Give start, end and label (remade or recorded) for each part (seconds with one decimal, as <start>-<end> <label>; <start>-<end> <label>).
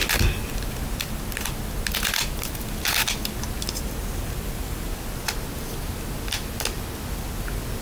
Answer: 0.0-7.8 recorded